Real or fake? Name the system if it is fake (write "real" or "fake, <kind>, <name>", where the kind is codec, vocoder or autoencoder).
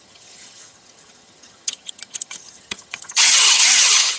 fake, vocoder, HiFi-GAN